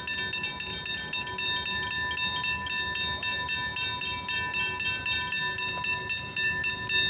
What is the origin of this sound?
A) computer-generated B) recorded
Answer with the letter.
B